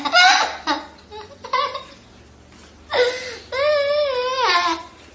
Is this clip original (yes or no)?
yes